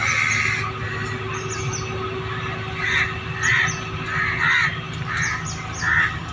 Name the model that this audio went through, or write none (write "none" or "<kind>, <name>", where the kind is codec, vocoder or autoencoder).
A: none